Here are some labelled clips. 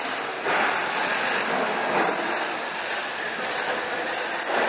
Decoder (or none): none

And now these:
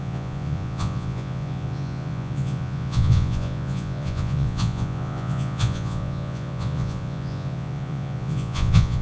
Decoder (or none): vocoder, Vocos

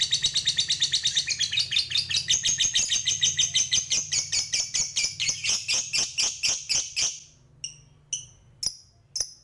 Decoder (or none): none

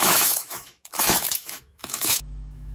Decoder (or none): autoencoder, DAC-VAE